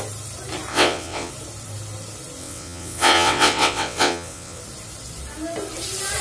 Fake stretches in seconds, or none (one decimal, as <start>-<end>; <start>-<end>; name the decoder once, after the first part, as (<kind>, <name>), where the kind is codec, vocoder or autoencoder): 0.7-1.3 (vocoder, WaveNeXt); 2.4-4.6